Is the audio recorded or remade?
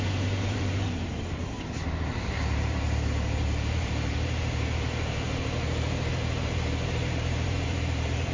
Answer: remade